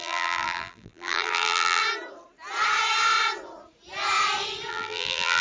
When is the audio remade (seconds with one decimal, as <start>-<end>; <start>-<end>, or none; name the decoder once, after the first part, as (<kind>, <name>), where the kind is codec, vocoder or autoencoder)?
0.0-1.8 (vocoder, BigVGAN v2); 4.7-5.4